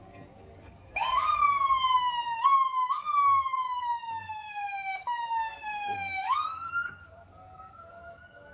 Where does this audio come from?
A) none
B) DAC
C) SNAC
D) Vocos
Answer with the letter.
B